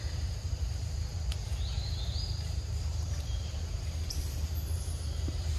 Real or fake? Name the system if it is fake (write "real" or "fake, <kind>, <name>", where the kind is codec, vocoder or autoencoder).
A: fake, vocoder, BigVGAN v2